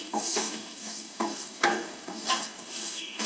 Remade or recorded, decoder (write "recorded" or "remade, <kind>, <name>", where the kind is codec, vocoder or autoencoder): remade, codec, DAC